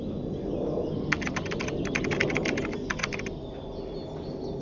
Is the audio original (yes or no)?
yes